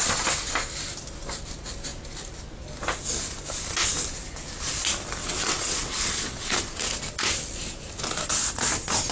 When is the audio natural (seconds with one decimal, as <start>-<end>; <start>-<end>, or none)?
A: 0.0-5.2; 6.6-9.1